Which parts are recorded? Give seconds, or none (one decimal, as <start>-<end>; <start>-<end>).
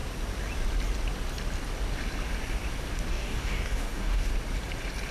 0.0-3.1; 4.3-5.1